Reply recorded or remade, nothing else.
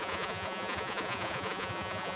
remade